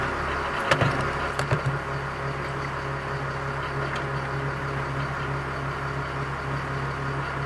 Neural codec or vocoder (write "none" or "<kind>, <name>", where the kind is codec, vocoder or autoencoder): none